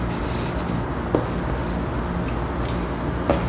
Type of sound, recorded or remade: recorded